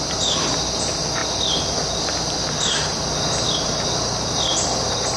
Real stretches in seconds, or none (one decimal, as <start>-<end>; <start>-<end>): 0.0-5.2